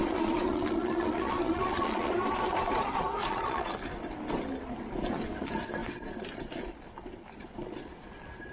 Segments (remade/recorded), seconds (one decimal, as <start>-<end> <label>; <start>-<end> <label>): 0.0-2.1 remade; 2.1-3.2 recorded; 3.2-3.7 remade; 3.7-8.5 recorded